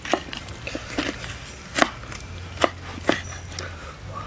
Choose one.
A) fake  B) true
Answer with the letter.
B